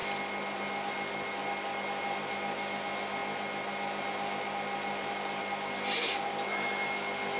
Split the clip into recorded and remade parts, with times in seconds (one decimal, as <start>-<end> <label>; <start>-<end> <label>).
0.0-7.4 recorded